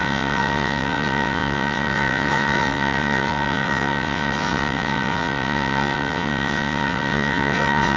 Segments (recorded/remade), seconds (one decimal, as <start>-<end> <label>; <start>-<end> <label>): 0.0-8.0 remade